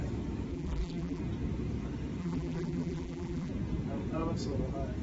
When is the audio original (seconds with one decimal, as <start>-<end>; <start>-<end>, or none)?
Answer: 0.0-0.5; 1.2-2.2; 3.5-5.0